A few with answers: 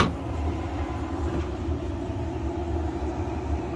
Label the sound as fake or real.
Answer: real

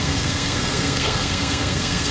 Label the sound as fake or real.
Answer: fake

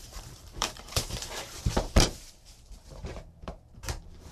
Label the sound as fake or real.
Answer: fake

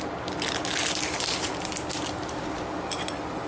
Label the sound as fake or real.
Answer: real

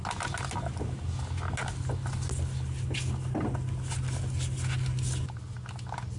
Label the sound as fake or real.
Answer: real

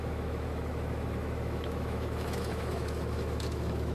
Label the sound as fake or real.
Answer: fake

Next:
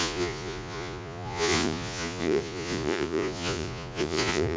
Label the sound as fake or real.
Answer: fake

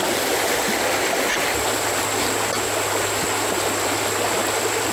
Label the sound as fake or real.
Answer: real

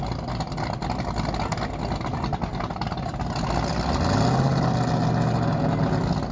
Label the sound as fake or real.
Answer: real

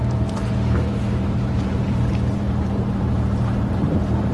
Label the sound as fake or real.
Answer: fake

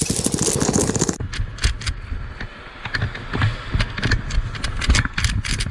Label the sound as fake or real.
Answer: real